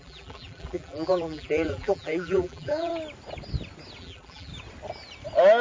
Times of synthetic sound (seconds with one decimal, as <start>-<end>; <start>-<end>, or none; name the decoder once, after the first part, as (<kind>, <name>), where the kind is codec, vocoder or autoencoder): 0.0-2.9 (vocoder, BigVGAN v2); 4.0-4.5